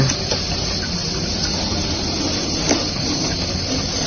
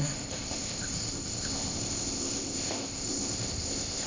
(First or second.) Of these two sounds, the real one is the first